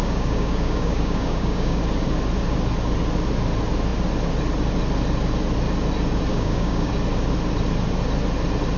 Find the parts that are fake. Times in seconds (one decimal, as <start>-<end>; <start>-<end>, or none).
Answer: 0.0-1.8; 6.3-6.9